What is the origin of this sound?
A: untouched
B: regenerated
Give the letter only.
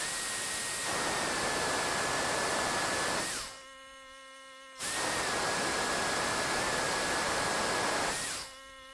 A